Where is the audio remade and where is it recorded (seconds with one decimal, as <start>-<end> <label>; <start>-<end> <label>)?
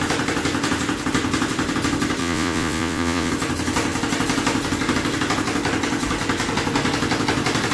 0.0-2.2 recorded; 2.2-3.3 remade; 3.3-7.7 recorded